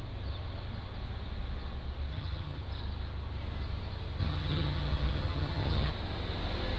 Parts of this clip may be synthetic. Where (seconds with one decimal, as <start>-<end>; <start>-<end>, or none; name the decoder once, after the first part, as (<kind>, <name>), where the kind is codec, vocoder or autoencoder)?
2.1-2.6 (vocoder, HiFi-GAN); 4.2-5.9